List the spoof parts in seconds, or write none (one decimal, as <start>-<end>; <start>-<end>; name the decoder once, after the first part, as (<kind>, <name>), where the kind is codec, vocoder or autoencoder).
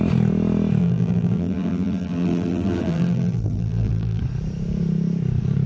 0.8-4.2 (vocoder, BigVGAN v2)